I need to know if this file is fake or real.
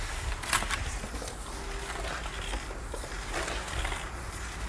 real